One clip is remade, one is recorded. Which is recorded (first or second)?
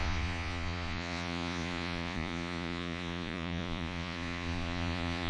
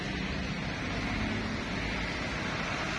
second